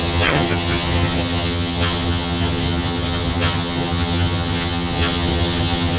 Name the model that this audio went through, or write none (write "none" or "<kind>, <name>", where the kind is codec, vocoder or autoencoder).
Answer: vocoder, HiFi-GAN